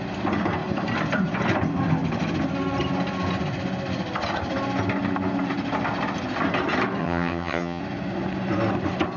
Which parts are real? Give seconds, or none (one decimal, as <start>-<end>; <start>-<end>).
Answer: 0.0-7.0; 7.8-9.2